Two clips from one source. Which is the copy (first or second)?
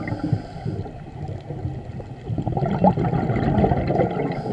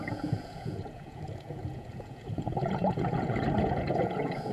second